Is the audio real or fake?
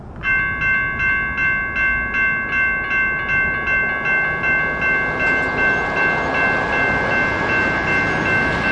real